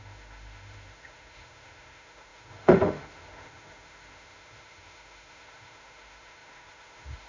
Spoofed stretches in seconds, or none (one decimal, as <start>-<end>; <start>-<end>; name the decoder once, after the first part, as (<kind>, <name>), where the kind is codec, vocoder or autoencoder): 0.0-7.3 (autoencoder, DAC-VAE)